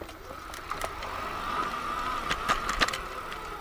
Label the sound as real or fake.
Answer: real